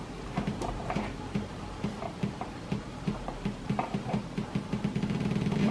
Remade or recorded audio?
remade